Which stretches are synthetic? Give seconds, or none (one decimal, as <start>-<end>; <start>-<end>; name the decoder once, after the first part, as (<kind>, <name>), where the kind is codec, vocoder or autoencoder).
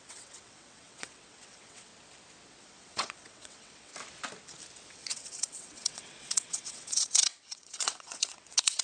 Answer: 0.0-1.9 (vocoder, WaveNeXt); 2.6-3.9; 4.9-8.8